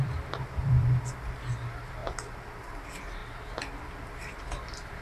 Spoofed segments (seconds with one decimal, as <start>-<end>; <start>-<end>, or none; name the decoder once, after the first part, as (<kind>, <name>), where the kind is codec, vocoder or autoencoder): 0.0-2.0 (vocoder, BigVGAN v2); 2.6-5.0